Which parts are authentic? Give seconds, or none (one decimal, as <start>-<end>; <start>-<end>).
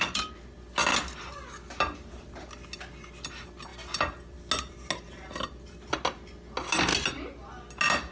0.0-8.1